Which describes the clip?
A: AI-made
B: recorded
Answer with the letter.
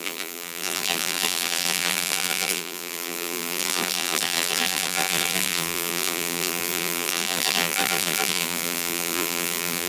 A